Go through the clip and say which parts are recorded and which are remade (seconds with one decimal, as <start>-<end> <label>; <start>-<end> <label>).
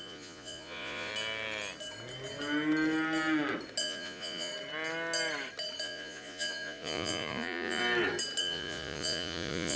0.0-1.1 remade; 1.1-3.8 recorded; 3.8-4.5 remade; 4.5-5.8 recorded; 5.8-7.8 remade; 7.8-8.4 recorded; 8.4-9.8 remade